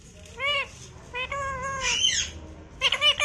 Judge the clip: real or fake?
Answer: real